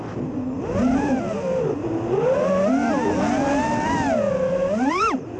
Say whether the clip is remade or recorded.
recorded